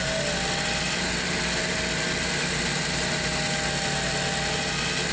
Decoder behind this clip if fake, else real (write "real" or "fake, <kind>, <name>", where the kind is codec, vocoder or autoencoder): real